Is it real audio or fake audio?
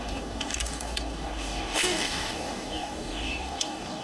fake